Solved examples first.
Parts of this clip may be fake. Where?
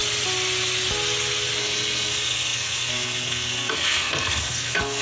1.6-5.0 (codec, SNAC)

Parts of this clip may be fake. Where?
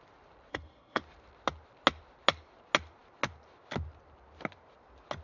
0.5-1.0 (codec, SNAC)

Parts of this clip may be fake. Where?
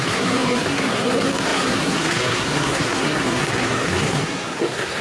0.0-5.0 (codec, SNAC)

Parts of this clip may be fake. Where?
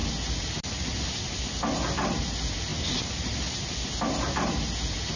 none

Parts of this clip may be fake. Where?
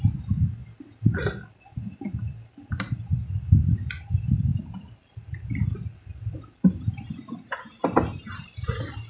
none